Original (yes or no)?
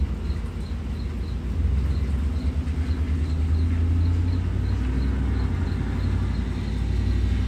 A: yes